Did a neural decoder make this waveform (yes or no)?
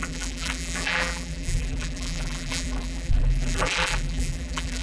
yes